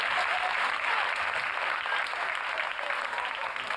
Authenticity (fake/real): real